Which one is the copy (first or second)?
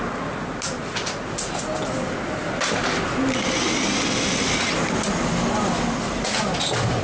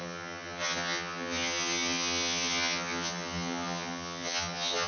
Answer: second